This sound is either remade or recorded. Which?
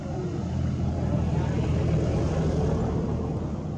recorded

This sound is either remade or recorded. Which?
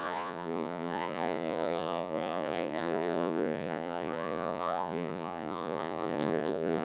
remade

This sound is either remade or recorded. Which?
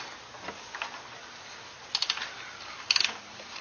recorded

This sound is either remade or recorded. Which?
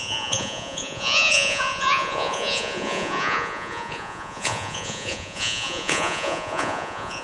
remade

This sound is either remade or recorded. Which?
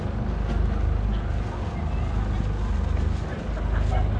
recorded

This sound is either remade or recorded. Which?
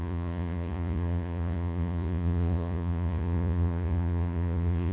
remade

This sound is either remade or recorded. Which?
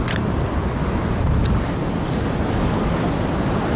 recorded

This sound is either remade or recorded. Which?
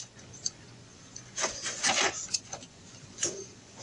remade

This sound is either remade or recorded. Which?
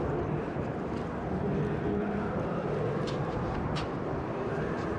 recorded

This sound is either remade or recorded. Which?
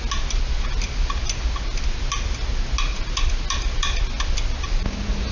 recorded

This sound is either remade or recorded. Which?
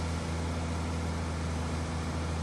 recorded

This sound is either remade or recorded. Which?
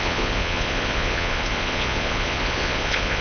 remade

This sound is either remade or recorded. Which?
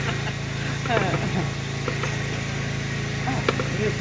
recorded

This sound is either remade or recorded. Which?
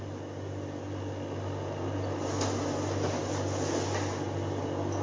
recorded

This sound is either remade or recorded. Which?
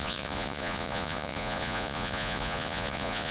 remade